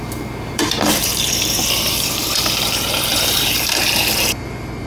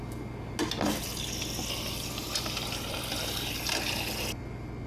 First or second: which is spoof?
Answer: first